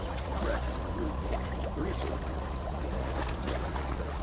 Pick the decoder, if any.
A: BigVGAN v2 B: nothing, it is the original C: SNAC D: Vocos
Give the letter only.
D